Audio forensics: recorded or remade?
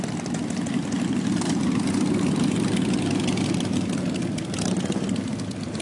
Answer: recorded